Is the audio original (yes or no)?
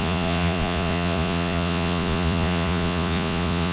no